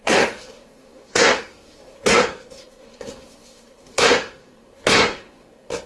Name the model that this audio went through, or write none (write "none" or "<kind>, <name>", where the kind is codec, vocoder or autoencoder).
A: codec, SNAC